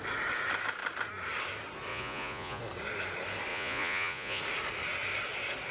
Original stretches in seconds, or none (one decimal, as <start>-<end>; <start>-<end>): 0.0-1.9; 2.6-3.5; 4.4-5.7